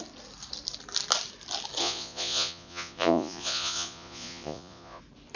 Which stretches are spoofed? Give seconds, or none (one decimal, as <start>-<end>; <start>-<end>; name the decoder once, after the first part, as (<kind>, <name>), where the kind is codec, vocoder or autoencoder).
1.8-5.0 (vocoder, Vocos)